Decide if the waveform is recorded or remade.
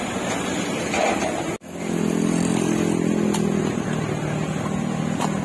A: recorded